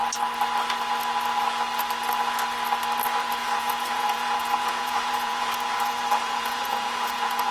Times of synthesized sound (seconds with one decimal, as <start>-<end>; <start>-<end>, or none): 3.4-7.5